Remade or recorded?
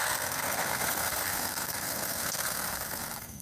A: remade